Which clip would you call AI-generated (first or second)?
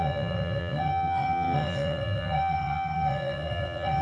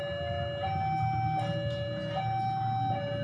first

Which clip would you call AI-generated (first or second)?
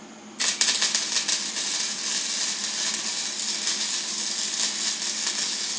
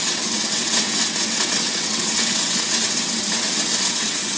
second